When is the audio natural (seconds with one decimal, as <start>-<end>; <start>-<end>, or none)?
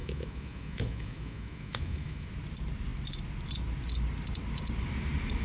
2.3-5.4